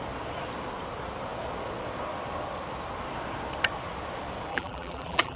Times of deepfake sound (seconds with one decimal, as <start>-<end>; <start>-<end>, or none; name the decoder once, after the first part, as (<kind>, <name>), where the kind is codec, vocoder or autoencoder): 4.5-5.4 (vocoder, BigVGAN v2)